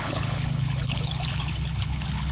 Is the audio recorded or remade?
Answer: remade